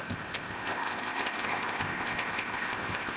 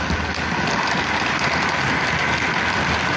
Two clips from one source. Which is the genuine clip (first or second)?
second